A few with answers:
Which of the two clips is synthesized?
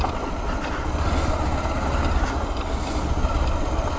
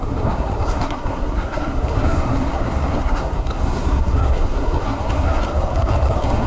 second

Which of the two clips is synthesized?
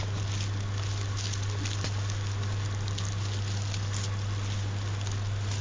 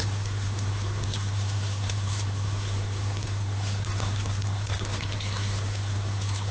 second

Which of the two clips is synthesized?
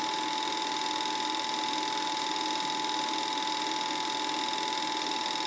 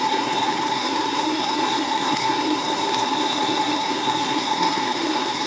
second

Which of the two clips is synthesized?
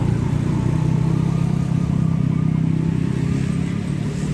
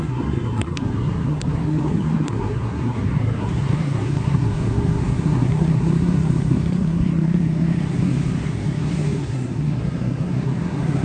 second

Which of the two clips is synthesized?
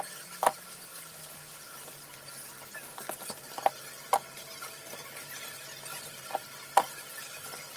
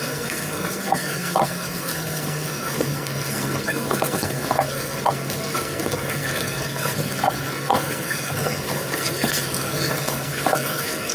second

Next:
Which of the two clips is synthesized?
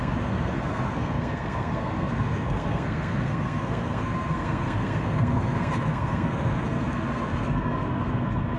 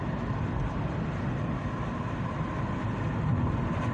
first